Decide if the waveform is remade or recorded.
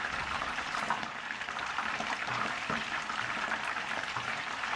remade